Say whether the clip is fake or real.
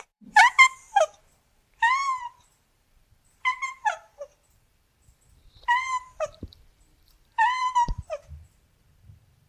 fake